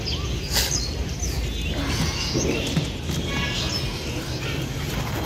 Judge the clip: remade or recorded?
recorded